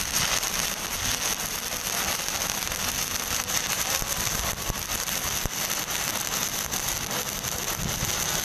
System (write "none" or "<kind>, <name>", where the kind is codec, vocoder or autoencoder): none